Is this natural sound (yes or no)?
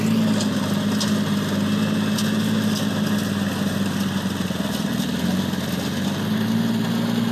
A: yes